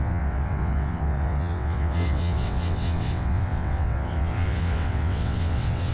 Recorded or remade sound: remade